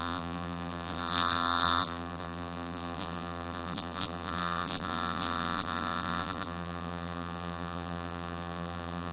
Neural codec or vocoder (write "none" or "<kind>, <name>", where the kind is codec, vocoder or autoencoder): vocoder, BigVGAN v2